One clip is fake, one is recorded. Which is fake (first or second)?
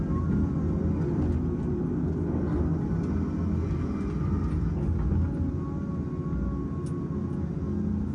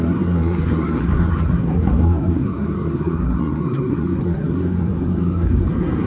second